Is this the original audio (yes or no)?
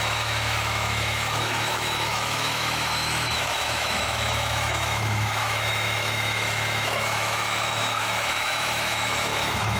no